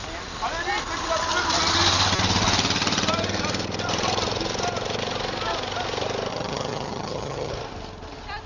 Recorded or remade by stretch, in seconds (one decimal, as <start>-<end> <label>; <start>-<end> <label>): 0.0-6.3 recorded; 6.3-7.5 remade; 7.5-8.5 recorded